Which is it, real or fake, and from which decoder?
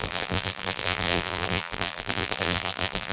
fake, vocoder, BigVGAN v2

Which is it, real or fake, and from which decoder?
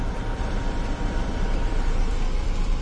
fake, vocoder, BigVGAN v2